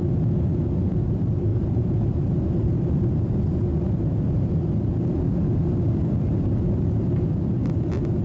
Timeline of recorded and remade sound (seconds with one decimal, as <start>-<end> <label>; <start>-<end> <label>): 0.0-1.5 recorded; 1.5-3.1 remade; 3.1-8.2 recorded